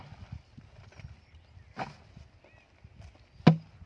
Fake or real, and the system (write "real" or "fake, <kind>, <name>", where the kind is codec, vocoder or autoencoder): real